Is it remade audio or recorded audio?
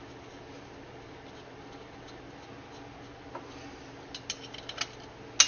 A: recorded